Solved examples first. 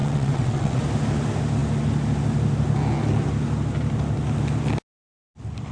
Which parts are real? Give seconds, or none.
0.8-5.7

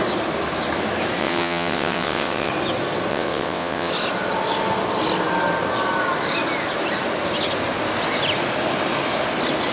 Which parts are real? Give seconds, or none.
0.0-1.2; 2.5-3.1; 3.9-9.7

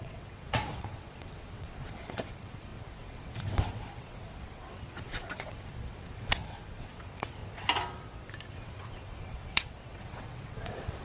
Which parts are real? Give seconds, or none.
7.4-8.5